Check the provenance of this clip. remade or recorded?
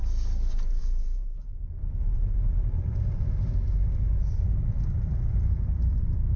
remade